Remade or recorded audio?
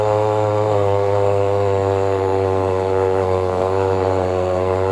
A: remade